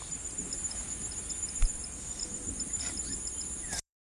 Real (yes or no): no